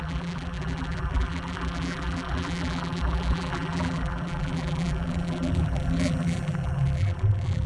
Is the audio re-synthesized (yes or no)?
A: yes